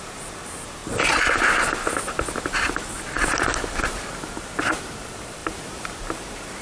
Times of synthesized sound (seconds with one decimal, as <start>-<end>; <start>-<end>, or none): 0.0-0.8; 4.8-6.6